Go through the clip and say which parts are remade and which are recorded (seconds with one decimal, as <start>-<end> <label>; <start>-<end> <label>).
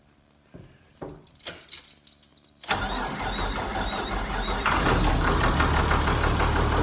0.0-6.8 recorded